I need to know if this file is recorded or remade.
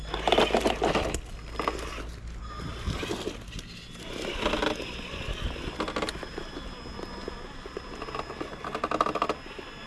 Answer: recorded